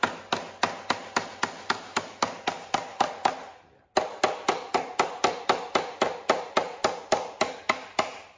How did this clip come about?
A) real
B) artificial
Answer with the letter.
A